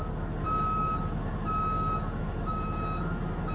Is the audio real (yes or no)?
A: no